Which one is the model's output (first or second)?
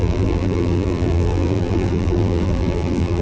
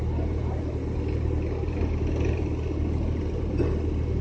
first